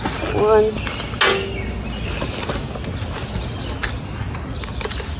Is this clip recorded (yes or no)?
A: yes